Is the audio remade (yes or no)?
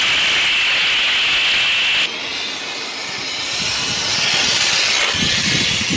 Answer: no